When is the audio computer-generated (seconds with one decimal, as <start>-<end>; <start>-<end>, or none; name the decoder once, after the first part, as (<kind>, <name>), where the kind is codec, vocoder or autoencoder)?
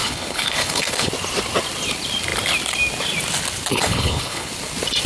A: 0.0-1.1 (codec, HILCodec); 3.8-4.5